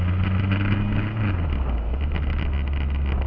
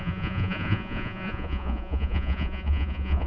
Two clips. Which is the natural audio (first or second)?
first